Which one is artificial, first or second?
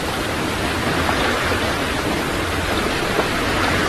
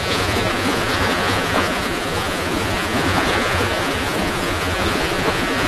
second